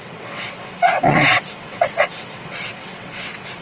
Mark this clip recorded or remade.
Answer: remade